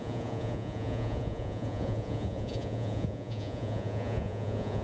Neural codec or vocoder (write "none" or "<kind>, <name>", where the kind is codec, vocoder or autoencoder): vocoder, Vocos